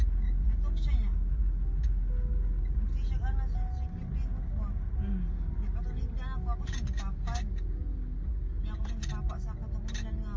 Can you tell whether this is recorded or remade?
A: recorded